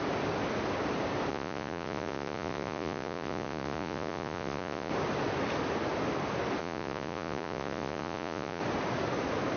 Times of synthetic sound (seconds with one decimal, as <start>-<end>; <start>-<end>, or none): 1.3-4.9; 6.6-8.6